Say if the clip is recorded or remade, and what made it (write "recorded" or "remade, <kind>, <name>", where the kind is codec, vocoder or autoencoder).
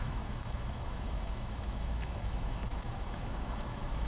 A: remade, autoencoder, DAC-VAE